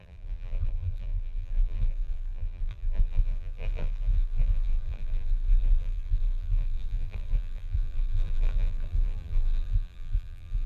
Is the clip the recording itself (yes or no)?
no